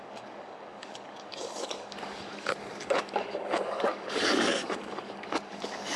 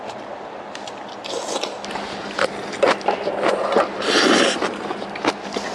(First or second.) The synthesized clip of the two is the first